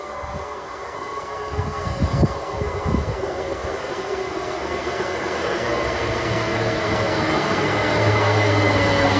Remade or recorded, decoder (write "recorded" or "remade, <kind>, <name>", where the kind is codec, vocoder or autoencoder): remade, codec, SNAC